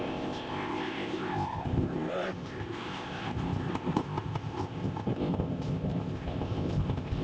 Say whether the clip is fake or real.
fake